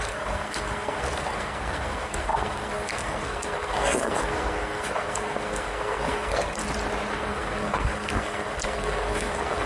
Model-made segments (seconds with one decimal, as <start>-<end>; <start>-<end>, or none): 0.0-6.6; 7.1-9.7